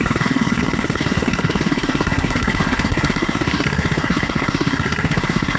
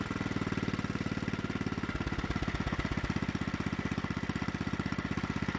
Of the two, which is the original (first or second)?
second